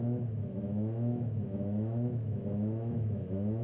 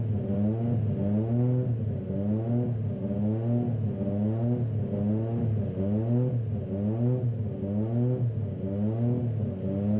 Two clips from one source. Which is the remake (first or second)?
first